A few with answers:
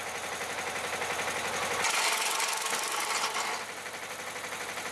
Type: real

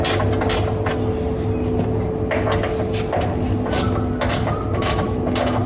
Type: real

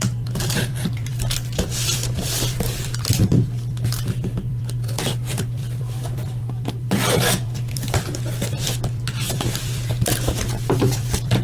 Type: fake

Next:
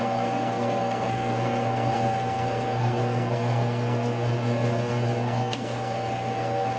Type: fake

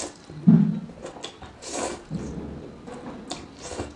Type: real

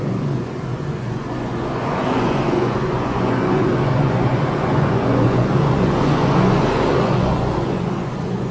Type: fake